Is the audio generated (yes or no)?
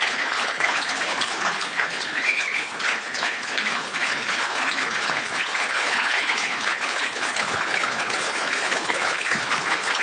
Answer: yes